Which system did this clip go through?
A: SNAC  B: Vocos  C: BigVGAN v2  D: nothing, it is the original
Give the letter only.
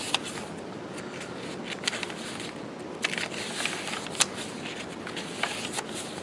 D